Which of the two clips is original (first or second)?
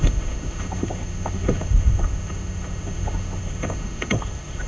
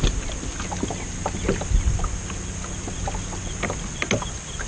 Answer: second